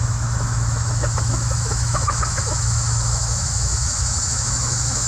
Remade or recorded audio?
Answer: remade